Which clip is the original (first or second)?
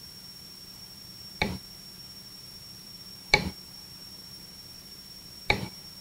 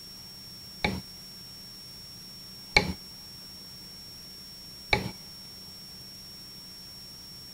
second